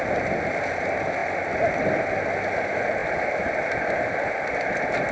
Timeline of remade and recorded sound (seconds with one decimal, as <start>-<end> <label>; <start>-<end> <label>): 0.0-3.0 recorded; 3.0-3.9 remade; 3.9-5.1 recorded